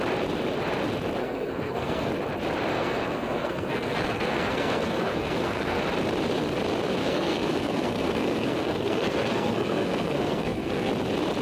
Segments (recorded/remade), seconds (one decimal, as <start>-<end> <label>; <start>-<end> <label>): 0.0-1.2 recorded; 1.2-2.1 remade; 2.1-2.7 recorded; 2.7-5.8 remade; 5.8-7.0 recorded; 7.0-10.9 remade; 10.9-11.4 recorded